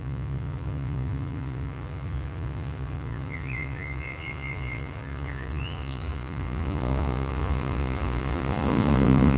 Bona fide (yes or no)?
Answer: no